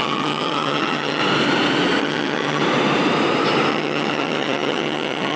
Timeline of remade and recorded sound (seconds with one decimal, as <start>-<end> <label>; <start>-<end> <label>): 0.0-1.2 remade; 1.2-2.0 recorded; 2.0-2.6 remade; 2.6-3.7 recorded; 3.7-5.4 remade